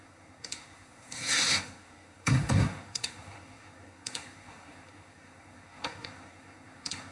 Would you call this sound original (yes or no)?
no